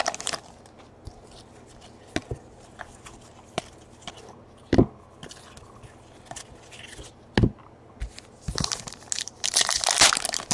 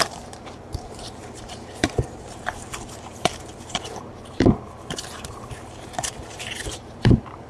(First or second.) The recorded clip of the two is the first